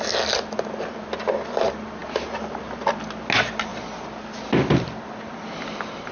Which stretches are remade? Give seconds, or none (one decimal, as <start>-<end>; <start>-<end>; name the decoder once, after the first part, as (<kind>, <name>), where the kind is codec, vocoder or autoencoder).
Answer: none